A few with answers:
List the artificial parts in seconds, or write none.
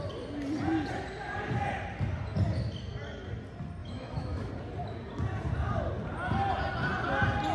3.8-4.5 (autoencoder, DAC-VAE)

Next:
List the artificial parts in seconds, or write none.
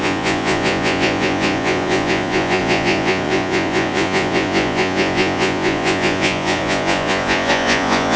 0.0-8.2 (vocoder, Vocos)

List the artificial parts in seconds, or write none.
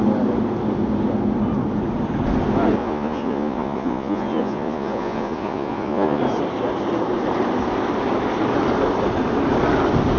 2.8-6.2 (vocoder, Vocos)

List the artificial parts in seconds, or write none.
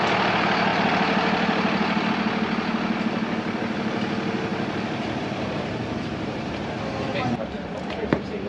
0.7-2.1 (vocoder, BigVGAN v2); 4.5-8.5